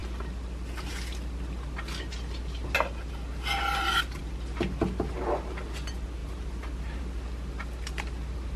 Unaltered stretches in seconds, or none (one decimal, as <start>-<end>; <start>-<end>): 0.0-8.6